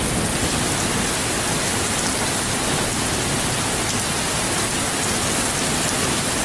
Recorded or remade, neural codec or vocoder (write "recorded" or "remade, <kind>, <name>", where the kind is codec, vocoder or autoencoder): recorded